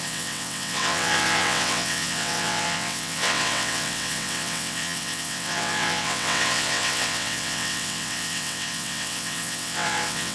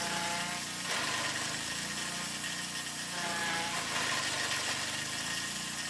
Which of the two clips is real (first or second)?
second